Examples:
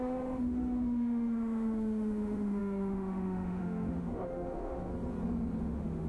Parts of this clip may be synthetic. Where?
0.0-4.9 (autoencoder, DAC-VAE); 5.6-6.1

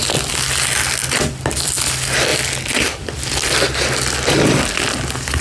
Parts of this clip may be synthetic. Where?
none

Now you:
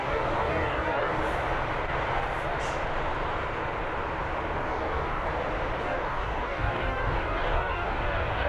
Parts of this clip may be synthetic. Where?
0.0-1.2 (codec, DAC); 4.6-5.3; 5.8-8.5